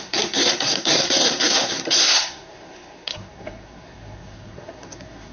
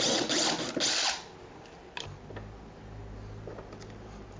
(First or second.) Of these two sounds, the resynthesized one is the first